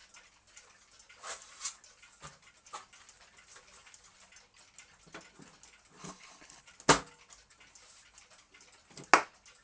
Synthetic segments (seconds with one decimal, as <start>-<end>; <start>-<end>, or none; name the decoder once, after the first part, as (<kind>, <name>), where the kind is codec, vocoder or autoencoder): 6.0-6.6 (codec, HILCodec)